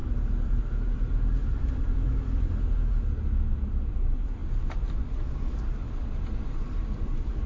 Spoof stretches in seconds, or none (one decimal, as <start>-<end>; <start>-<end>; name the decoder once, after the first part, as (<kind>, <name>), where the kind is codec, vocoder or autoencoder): 0.0-2.9 (vocoder, BigVGAN v2); 4.4-5.0